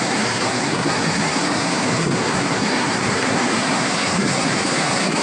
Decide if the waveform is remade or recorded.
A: remade